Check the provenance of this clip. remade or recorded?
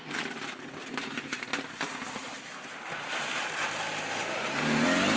recorded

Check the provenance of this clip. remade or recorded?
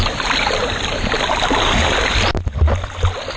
recorded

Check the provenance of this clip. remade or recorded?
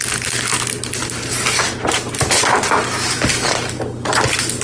recorded